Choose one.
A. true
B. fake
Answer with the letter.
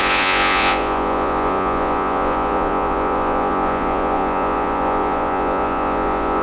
B